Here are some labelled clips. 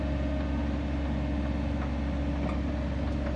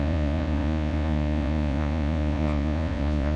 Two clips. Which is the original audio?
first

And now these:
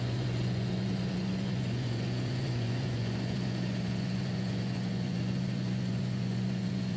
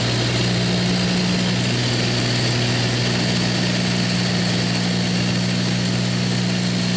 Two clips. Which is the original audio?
second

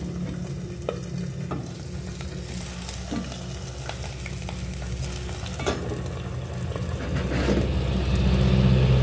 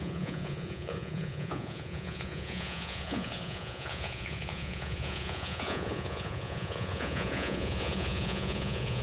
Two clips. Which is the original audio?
first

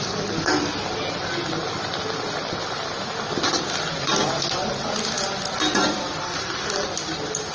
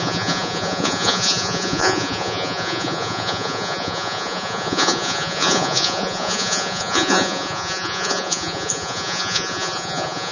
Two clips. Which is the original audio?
first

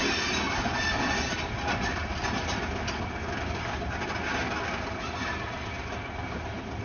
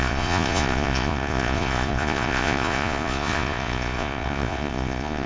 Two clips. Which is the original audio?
first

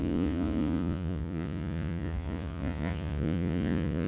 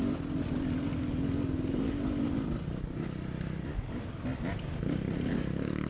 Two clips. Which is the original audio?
second